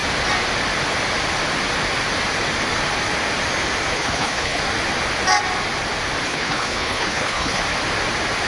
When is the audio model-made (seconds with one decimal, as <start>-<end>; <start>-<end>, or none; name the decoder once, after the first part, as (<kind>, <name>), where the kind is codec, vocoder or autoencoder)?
3.9-4.6 (codec, HILCodec); 6.3-7.6